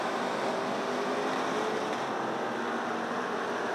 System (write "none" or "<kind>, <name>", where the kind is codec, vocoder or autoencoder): none